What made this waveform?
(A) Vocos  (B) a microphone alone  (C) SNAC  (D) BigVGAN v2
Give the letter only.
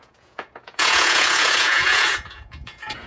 A